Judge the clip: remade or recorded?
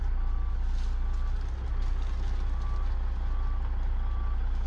recorded